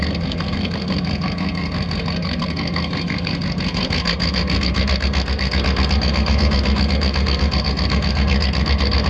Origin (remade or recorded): remade